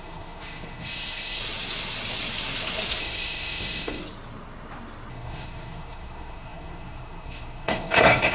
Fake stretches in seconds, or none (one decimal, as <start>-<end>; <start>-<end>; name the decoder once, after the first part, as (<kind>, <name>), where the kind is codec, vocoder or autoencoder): 0.0-1.4 (codec, SNAC); 3.0-4.0; 5.1-8.3

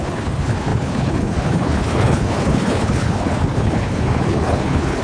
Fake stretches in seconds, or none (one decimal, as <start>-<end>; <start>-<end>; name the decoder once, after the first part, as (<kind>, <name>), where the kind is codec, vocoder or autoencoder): 0.0-5.0 (codec, HILCodec)

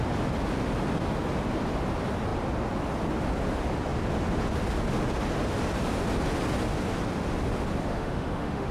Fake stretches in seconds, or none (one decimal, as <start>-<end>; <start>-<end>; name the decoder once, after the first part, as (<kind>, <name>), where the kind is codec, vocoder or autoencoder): 7.9-8.7 (autoencoder, DAC-VAE)

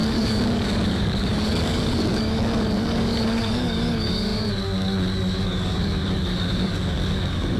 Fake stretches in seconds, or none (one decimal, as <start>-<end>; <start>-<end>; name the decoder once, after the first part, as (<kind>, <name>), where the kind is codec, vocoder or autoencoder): 0.0-7.6 (codec, DAC)

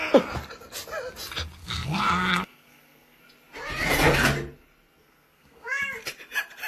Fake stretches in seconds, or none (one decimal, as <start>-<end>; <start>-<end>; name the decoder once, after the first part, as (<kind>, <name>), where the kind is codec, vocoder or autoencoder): 1.6-3.2 (codec, SNAC); 5.0-5.8

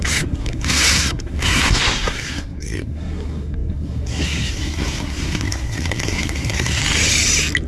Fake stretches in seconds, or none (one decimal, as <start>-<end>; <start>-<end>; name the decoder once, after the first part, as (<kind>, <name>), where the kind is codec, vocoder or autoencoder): 0.0-6.8 (codec, SNAC)

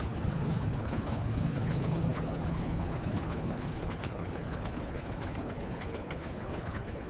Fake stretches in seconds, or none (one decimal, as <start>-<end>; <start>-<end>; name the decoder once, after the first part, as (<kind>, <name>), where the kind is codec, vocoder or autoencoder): 0.0-7.1 (codec, HILCodec)

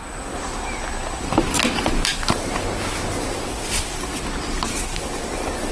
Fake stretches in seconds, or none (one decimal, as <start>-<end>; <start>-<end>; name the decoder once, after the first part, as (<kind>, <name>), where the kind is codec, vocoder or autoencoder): none